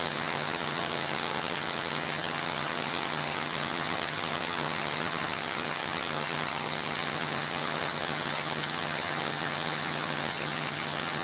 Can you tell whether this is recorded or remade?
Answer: remade